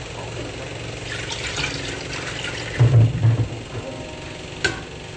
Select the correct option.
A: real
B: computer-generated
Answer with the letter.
A